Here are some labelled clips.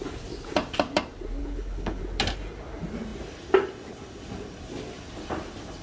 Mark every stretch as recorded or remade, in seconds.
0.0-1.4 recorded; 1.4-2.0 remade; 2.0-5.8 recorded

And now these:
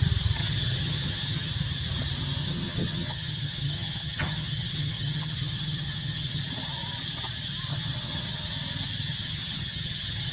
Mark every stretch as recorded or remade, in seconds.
0.0-0.4 recorded; 0.4-1.5 remade; 1.5-2.4 recorded; 2.4-6.4 remade; 6.4-7.7 recorded; 7.7-8.5 remade; 8.5-9.1 recorded; 9.1-10.3 remade

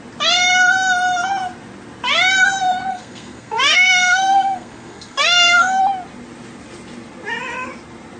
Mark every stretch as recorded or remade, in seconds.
0.0-2.9 recorded; 2.9-5.8 remade; 5.8-8.2 recorded

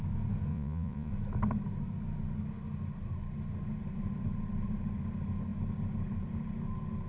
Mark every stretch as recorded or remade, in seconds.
0.0-0.5 recorded; 0.5-1.1 remade; 1.1-7.1 recorded

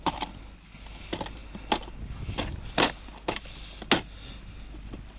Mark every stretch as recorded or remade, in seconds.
0.0-5.2 recorded

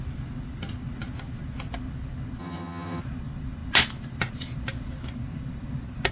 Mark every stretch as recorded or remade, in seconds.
0.0-2.4 recorded; 2.4-3.0 remade; 3.0-6.1 recorded

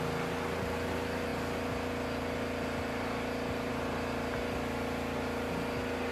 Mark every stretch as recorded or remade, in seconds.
0.0-6.1 recorded